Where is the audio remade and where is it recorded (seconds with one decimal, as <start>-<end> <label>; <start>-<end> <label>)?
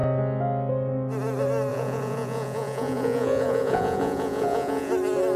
0.0-1.7 recorded; 1.7-4.9 remade; 4.9-5.4 recorded